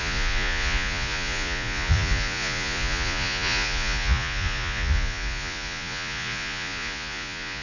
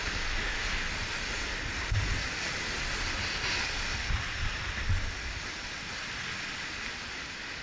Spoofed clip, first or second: first